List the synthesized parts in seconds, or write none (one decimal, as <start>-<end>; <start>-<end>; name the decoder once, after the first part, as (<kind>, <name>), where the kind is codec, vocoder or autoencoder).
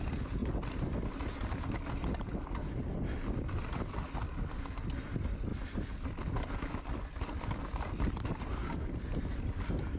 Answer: none